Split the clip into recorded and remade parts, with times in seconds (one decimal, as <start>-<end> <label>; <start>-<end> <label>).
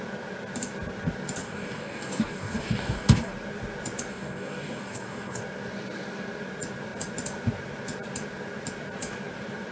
0.0-1.4 recorded; 1.4-3.3 remade; 3.3-4.1 recorded; 4.1-5.4 remade; 5.4-9.7 recorded